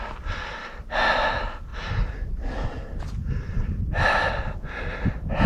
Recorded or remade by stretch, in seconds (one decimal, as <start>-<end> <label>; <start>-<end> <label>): 0.0-5.5 recorded